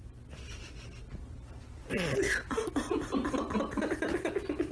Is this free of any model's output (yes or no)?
yes